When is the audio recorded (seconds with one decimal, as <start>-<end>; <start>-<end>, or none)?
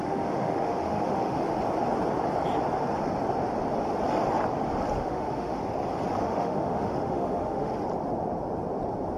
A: 1.4-5.0; 5.6-6.2; 7.7-9.2